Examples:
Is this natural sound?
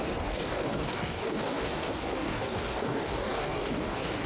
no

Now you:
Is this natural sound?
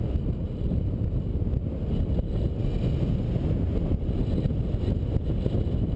yes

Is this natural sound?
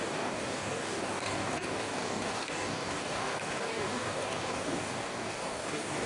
no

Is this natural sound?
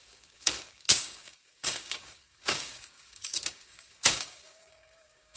no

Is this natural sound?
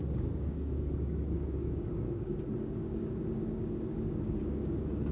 no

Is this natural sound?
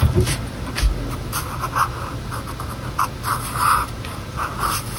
yes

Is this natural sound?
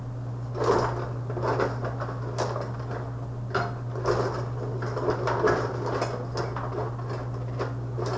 yes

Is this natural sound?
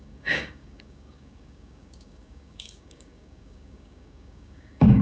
no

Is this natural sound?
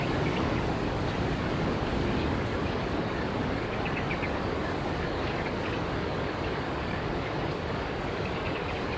no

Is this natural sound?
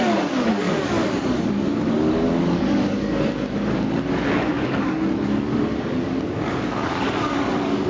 no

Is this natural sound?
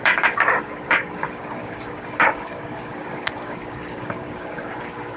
no